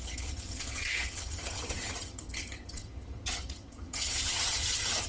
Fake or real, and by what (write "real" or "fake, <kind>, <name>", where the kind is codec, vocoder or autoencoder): fake, vocoder, HiFi-GAN